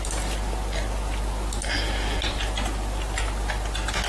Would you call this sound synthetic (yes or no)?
no